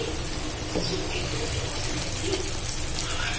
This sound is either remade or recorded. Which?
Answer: recorded